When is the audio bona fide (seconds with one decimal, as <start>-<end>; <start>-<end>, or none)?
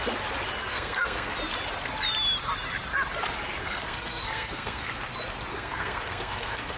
0.0-0.7; 1.3-3.6; 4.9-5.5